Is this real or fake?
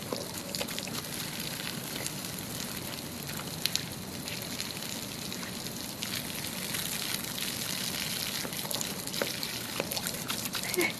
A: fake